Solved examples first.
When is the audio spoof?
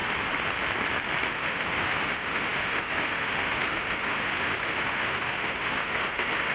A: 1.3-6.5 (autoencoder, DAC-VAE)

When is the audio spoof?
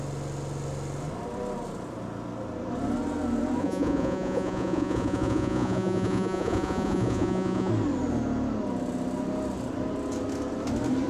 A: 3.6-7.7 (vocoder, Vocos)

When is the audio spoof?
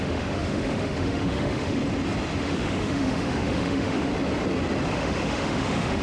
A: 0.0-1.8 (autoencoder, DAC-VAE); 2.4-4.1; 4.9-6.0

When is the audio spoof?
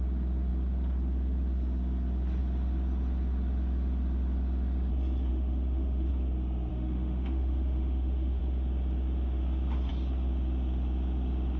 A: 5.3-6.1 (autoencoder, DAC-VAE); 6.7-8.4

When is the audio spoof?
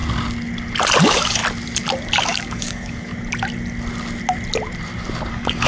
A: 1.0-1.4 (codec, DAC); 2.2-3.1; 5.3-5.7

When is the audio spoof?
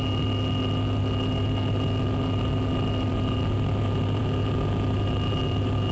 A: none